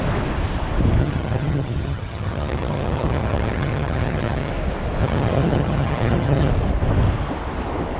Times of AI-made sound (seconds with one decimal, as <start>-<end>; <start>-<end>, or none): 1.0-4.5; 5.0-6.5